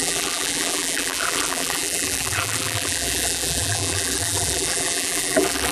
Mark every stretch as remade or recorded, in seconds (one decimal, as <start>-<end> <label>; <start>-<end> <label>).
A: 0.0-5.7 remade